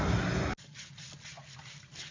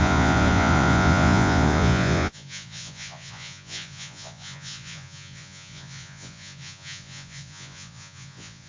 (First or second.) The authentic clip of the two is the first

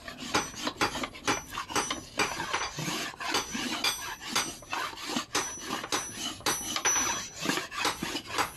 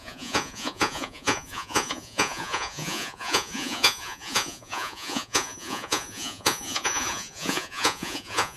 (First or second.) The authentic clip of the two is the first